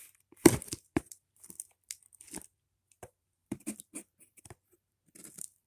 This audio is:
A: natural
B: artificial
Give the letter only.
B